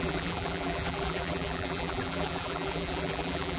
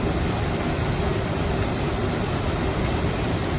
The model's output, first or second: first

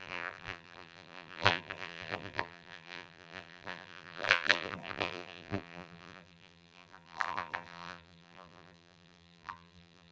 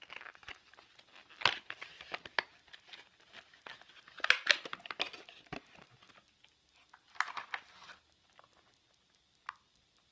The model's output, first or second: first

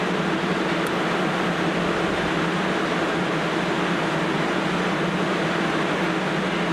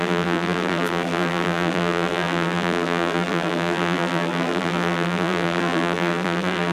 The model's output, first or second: second